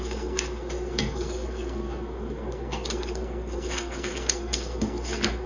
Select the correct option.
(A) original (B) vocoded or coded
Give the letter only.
B